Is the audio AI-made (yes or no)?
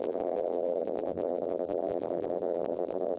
yes